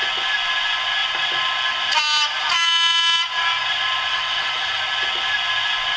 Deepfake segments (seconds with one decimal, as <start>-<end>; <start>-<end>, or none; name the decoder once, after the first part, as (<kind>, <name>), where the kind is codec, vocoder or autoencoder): 4.1-4.8 (vocoder, WaveNeXt)